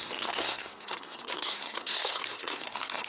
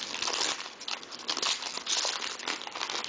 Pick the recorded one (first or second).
second